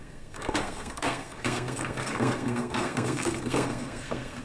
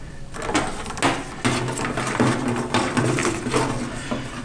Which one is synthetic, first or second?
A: first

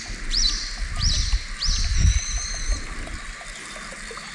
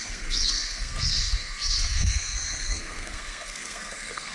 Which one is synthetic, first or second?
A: second